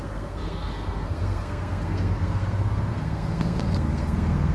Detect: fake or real fake